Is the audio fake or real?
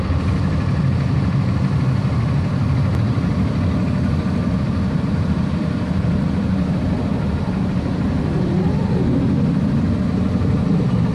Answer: real